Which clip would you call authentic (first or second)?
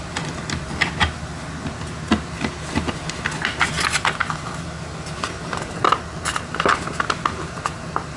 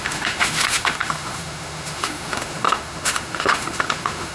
first